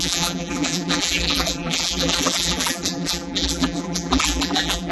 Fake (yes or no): yes